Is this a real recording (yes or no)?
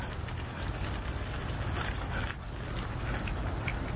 yes